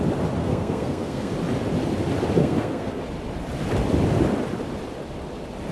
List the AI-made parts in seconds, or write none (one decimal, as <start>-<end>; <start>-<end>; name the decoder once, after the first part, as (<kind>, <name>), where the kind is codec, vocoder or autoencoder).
0.4-1.3 (codec, SNAC); 2.4-3.0